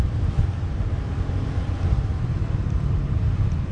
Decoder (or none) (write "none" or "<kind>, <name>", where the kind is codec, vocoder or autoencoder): none